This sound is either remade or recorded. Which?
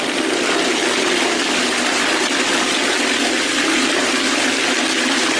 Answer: recorded